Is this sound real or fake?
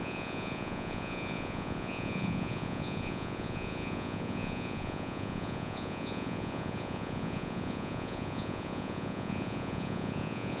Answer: fake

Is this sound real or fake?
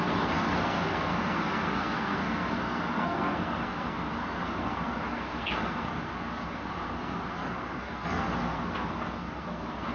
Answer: fake